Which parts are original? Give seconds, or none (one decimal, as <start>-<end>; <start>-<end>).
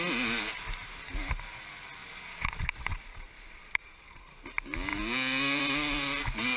0.0-2.0; 4.2-6.6